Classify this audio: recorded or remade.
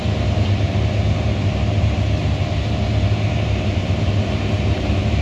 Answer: remade